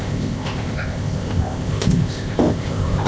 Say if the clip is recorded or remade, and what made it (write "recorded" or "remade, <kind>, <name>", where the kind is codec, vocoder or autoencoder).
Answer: remade, codec, ZipCodec